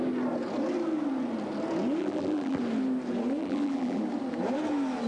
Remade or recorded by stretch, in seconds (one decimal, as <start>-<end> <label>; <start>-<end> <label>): 0.0-2.0 recorded; 2.0-2.6 remade; 2.6-3.4 recorded; 3.4-4.0 remade; 4.0-5.1 recorded